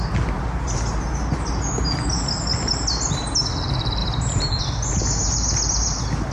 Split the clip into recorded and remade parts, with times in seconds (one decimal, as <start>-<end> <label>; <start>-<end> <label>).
0.0-4.0 recorded; 4.0-4.6 remade; 4.6-6.3 recorded